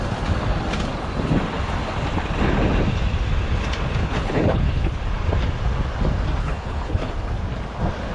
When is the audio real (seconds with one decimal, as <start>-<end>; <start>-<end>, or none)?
0.0-4.0; 5.0-6.4; 7.1-8.1